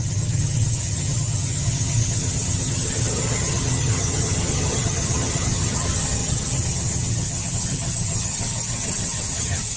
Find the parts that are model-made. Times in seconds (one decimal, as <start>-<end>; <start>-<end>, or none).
0.0-9.8